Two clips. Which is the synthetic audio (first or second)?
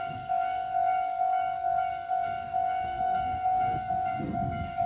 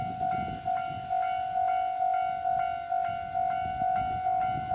first